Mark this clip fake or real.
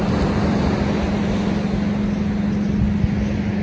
real